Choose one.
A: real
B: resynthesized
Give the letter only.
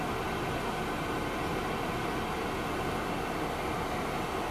A